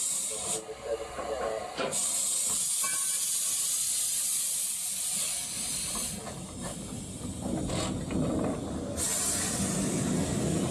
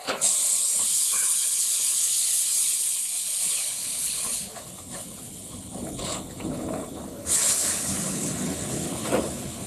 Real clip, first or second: first